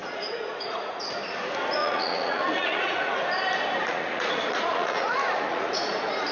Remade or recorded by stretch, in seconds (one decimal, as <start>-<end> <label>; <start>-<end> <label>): 0.0-1.1 remade; 1.1-1.8 recorded; 1.8-3.1 remade; 3.1-3.9 recorded; 3.9-5.7 remade; 5.7-6.3 recorded